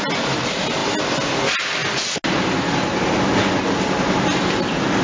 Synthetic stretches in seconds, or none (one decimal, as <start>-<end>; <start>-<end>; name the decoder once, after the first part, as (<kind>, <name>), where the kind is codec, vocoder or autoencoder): none